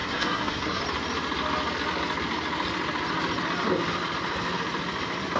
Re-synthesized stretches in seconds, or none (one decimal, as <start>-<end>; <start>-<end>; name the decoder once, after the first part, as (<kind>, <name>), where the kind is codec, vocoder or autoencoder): 0.0-0.8 (codec, SNAC)